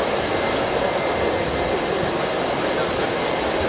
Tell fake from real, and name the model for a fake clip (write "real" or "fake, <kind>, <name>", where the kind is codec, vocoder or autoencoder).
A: real